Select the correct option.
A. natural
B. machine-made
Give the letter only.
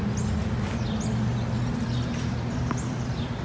A